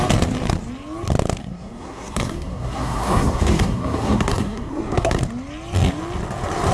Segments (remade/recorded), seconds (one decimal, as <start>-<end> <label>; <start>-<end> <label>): 0.0-1.4 recorded; 1.4-5.2 remade; 5.2-6.7 recorded